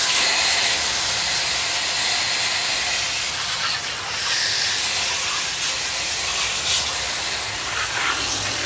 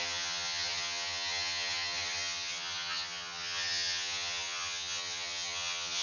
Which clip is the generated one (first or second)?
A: second